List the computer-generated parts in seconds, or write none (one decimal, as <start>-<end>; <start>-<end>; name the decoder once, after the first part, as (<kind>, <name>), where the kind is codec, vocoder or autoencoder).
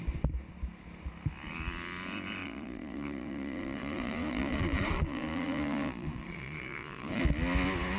2.4-7.2 (vocoder, Vocos)